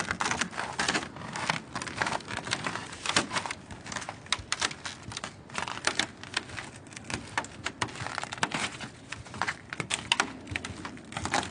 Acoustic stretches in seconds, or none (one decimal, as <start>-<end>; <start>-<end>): 0.0-2.8; 3.4-8.6; 9.6-11.5